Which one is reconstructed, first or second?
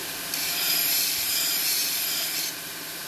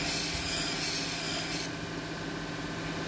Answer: first